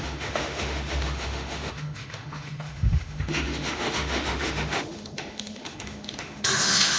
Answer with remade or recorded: remade